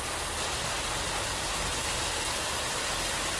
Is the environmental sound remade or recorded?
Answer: recorded